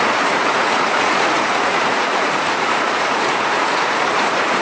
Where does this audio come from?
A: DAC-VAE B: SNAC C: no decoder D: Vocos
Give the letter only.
D